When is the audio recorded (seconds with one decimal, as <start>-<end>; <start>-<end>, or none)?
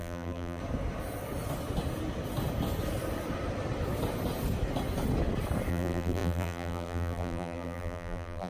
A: 0.6-5.7